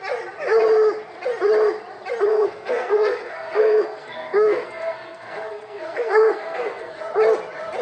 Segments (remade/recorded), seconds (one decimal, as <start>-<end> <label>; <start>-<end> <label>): 0.0-2.3 recorded; 2.3-7.0 remade; 7.0-7.8 recorded